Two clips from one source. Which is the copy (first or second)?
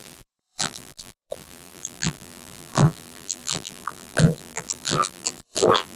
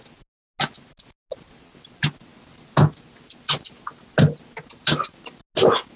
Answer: first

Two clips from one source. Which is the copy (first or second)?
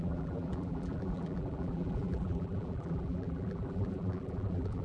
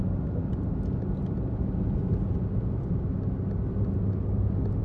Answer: first